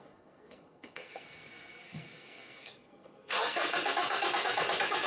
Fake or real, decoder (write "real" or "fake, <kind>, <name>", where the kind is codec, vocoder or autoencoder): fake, codec, SNAC